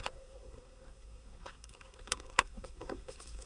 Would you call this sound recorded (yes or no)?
no